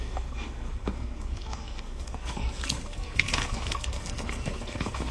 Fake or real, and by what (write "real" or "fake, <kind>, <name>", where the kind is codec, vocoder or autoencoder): fake, codec, SNAC